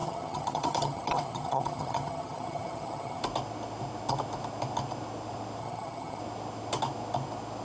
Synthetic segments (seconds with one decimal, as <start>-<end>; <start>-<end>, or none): 0.0-3.2; 5.6-6.2